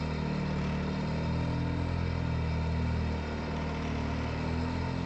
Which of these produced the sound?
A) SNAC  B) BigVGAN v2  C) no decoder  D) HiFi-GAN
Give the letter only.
C